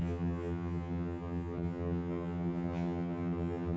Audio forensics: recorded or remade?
remade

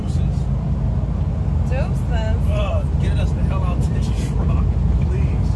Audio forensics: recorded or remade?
recorded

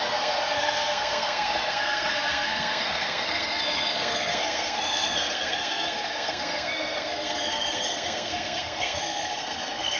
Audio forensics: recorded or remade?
remade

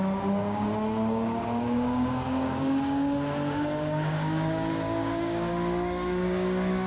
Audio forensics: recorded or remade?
remade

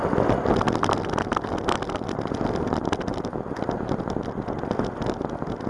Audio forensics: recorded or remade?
recorded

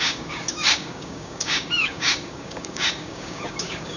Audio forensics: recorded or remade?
remade